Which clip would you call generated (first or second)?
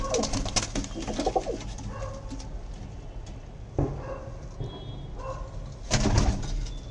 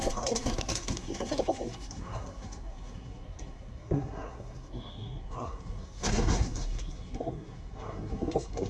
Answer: second